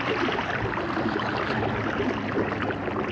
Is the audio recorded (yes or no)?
yes